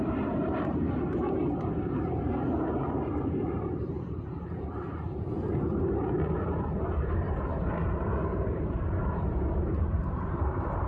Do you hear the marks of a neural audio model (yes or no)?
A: yes